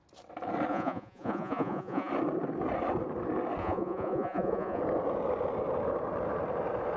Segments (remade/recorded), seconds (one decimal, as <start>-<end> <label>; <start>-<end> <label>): 0.0-0.7 recorded; 0.7-2.1 remade; 2.1-3.6 recorded; 3.6-4.8 remade; 4.8-7.0 recorded